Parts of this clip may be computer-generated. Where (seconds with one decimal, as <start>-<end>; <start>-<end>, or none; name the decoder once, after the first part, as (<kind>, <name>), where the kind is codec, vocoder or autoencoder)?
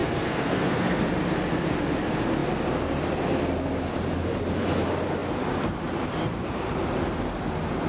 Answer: 0.0-1.0 (codec, SNAC)